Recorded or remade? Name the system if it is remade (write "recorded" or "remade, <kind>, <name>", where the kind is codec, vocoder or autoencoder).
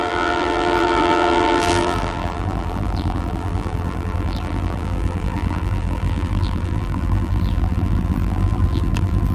remade, vocoder, BigVGAN v2